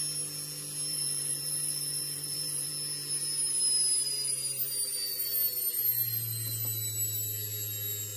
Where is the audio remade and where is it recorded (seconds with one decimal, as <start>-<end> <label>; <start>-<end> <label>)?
0.0-0.9 recorded; 0.9-2.7 remade; 2.7-8.2 recorded